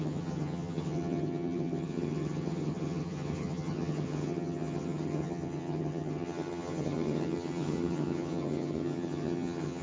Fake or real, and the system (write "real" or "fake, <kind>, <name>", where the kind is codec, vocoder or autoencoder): fake, vocoder, HiFi-GAN